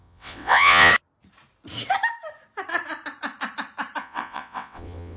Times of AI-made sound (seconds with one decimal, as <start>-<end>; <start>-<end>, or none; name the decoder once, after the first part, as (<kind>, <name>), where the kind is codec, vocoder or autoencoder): 0.0-0.9 (vocoder, WaveNeXt); 4.0-5.2